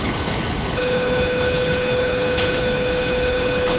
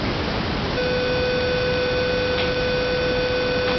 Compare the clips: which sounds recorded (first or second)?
second